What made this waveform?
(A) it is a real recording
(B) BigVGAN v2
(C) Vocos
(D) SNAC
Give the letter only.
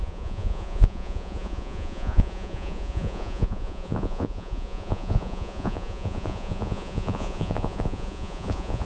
C